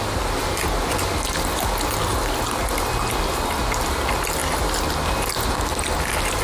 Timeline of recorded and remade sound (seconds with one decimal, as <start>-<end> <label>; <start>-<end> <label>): 0.0-6.4 recorded